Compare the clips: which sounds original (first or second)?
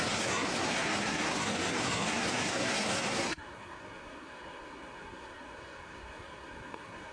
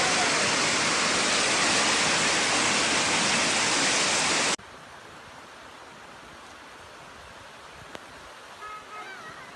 second